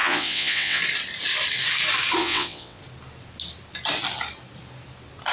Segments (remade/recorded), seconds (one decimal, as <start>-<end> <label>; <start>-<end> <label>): 0.0-0.8 remade; 0.8-2.2 recorded; 2.2-2.8 remade; 2.8-5.3 recorded